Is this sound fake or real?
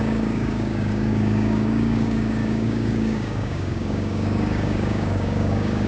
fake